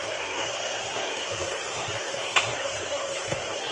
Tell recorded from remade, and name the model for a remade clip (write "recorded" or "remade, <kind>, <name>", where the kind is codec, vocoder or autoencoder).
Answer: remade, codec, SNAC